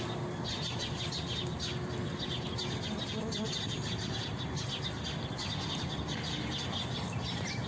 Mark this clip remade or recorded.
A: recorded